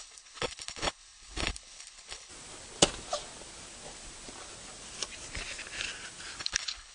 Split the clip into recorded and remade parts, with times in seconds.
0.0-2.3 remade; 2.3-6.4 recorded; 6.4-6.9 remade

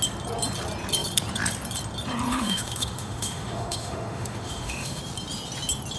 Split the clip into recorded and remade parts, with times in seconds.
0.0-2.3 recorded; 2.3-5.0 remade; 5.0-6.0 recorded

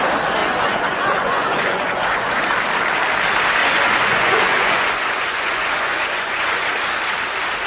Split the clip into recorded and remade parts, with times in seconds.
0.0-0.4 recorded; 0.4-2.4 remade; 2.4-3.6 recorded; 3.6-6.6 remade; 6.6-7.7 recorded

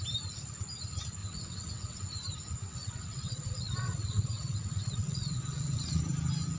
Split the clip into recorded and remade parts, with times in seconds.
0.0-1.2 recorded; 1.2-2.0 remade; 2.0-2.6 recorded; 2.6-6.0 remade; 6.0-6.6 recorded

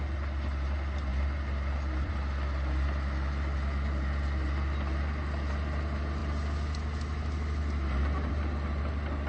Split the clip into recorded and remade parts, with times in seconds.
0.0-9.3 recorded

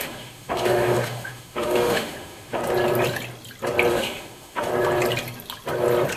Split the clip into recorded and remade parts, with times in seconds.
0.0-2.6 remade; 2.6-3.9 recorded; 3.9-4.7 remade; 4.7-6.2 recorded